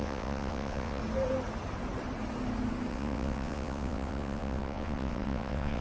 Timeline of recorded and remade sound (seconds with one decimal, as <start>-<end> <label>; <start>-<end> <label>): 0.0-1.0 remade; 1.0-2.9 recorded; 2.9-5.8 remade